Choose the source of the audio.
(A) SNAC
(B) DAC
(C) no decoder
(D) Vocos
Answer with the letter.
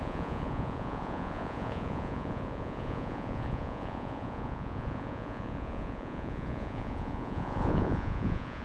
D